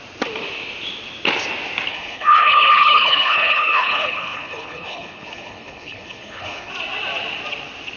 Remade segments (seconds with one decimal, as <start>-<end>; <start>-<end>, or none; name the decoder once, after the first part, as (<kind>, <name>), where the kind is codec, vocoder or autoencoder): 1.9-6.7 (codec, HILCodec)